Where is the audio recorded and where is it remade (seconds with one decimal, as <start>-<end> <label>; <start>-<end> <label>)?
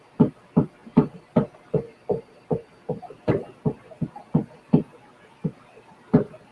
0.0-0.8 recorded; 0.8-4.1 remade; 4.1-6.5 recorded